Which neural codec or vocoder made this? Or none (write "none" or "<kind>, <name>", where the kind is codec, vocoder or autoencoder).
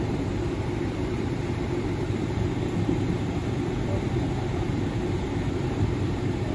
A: vocoder, BigVGAN v2